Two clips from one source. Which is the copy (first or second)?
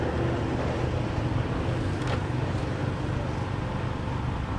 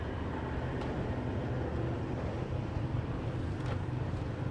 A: second